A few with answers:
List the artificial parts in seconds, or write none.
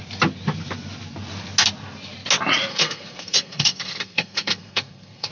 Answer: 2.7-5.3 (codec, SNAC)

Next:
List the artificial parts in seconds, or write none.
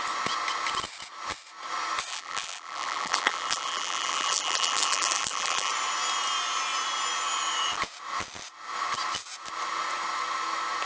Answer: 2.1-5.7 (vocoder, BigVGAN v2)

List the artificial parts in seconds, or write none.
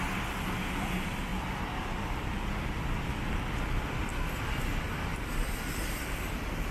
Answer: 0.0-4.1 (vocoder, BigVGAN v2); 4.8-6.7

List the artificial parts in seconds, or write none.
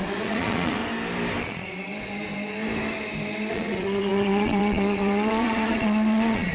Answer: 0.0-0.8 (vocoder, Vocos); 1.4-1.9; 3.5-6.5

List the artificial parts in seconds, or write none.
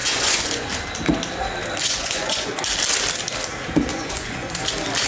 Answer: 0.0-0.7 (vocoder, Vocos); 1.8-2.6; 3.9-4.6